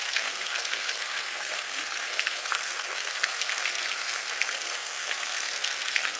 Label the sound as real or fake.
fake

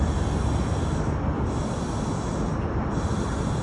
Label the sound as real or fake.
real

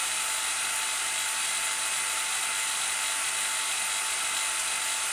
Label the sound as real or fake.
real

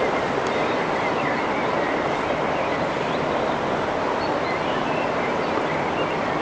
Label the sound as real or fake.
real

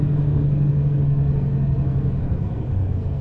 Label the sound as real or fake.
fake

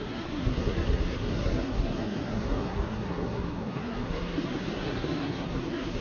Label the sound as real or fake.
fake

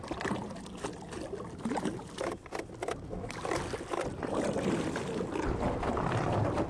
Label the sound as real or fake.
real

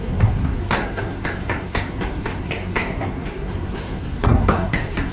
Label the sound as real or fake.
fake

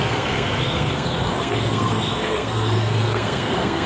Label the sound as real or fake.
fake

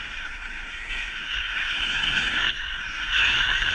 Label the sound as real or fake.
fake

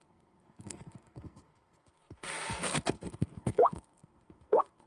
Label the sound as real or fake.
fake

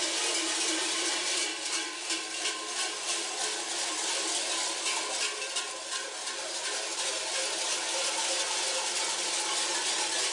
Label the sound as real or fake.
real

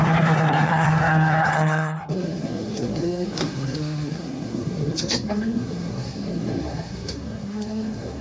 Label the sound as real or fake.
fake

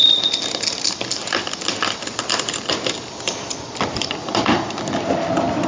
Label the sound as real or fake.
real